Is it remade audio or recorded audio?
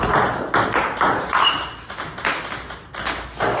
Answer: recorded